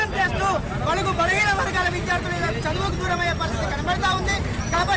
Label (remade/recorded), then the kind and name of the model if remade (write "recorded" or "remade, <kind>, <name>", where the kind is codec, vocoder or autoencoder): recorded